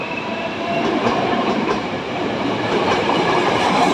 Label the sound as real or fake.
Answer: fake